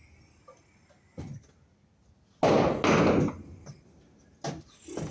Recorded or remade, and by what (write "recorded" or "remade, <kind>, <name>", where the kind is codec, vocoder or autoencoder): recorded